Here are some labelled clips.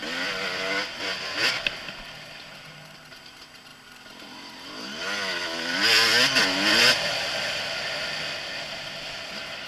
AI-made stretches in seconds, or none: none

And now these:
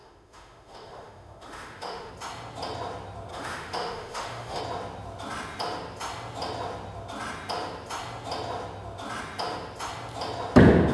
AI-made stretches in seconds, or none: 0.0-2.1 (autoencoder, DAC-VAE); 3.3-4.6

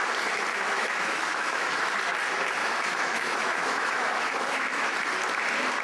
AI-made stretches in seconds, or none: 0.5-1.9 (autoencoder, DAC-VAE); 2.6-4.9

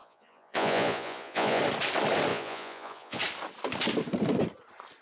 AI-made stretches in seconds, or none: 0.0-1.6 (vocoder, Vocos); 2.3-3.2

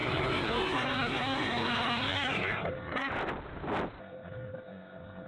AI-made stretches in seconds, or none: 0.0-3.1 (codec, SNAC); 4.0-5.3

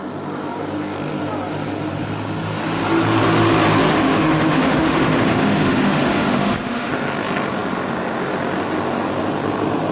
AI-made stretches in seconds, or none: 3.9-6.9 (autoencoder, DAC-VAE)

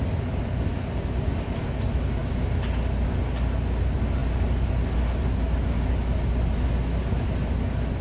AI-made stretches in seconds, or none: none